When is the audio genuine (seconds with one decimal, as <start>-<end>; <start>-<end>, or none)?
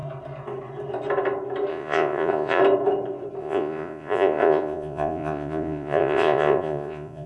0.0-1.7; 2.6-3.4